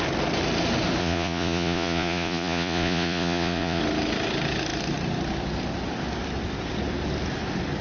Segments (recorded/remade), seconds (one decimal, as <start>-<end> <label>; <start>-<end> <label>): 0.0-1.0 recorded; 1.0-3.8 remade; 3.8-7.8 recorded